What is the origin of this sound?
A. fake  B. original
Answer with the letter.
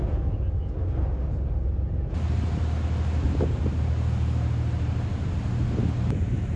B